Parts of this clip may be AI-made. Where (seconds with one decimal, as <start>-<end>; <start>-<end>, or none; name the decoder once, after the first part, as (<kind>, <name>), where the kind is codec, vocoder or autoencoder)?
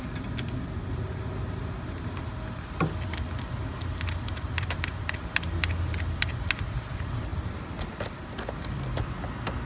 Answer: none